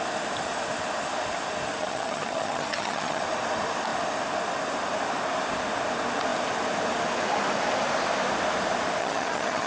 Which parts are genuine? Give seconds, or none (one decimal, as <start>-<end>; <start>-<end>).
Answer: 0.0-1.8; 3.2-9.0